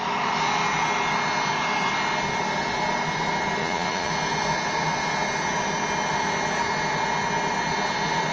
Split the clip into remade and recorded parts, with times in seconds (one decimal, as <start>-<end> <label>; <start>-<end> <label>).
0.0-3.6 recorded; 3.6-4.1 remade; 4.1-8.3 recorded